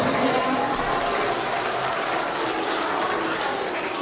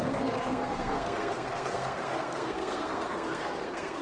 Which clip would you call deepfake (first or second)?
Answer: second